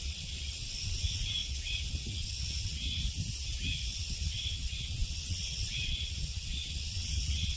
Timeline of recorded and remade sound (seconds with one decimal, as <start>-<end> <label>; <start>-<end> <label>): 0.0-3.0 remade; 3.0-3.7 recorded; 3.7-7.6 remade